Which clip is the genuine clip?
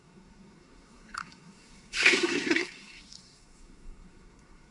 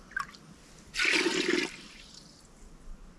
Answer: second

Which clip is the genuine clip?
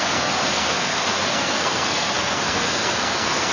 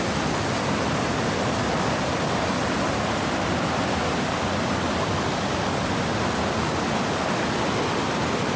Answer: second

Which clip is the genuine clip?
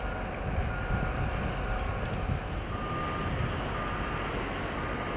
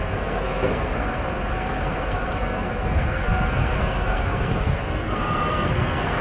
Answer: first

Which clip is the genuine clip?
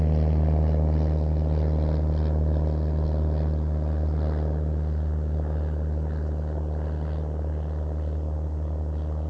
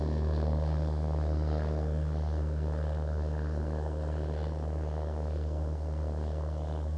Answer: first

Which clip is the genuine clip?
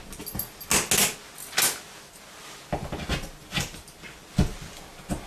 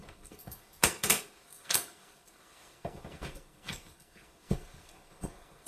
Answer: first